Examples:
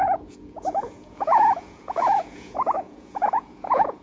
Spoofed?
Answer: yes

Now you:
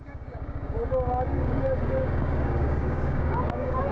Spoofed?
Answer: yes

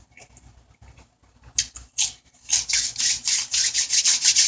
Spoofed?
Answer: no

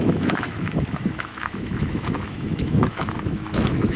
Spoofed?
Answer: yes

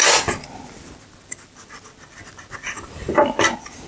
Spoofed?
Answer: no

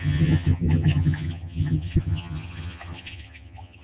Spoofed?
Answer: yes